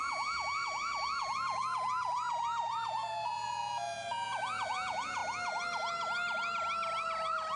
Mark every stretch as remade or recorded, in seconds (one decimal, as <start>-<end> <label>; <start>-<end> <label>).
0.0-5.2 remade; 5.2-7.6 recorded